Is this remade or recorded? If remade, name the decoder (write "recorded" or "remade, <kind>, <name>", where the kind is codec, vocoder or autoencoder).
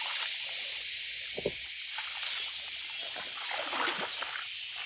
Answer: recorded